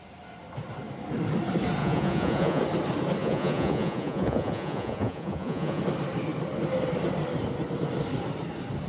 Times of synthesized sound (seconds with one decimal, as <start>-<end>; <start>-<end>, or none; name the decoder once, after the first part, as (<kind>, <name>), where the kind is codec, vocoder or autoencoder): 1.8-2.6 (vocoder, Vocos); 3.2-5.8